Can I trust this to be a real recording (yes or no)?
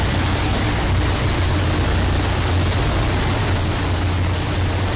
yes